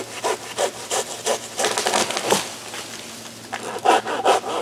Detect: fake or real real